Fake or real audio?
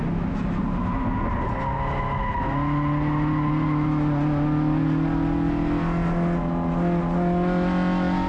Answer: real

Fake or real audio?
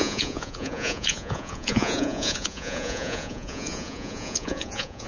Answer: fake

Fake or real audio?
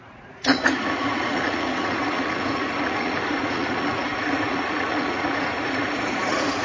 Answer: fake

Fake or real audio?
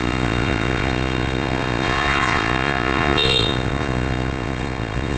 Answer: fake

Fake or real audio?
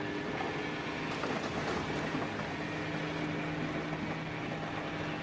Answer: real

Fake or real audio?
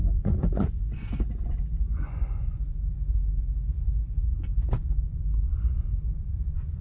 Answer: fake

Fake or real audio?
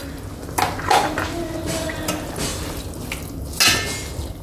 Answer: real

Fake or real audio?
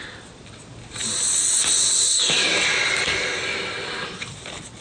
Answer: real